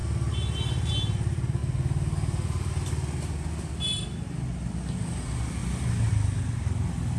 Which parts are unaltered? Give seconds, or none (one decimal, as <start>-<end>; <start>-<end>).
0.0-7.2